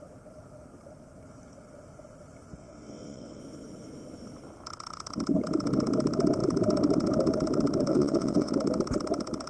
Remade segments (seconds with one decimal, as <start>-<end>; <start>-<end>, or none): 2.5-3.4; 7.9-8.5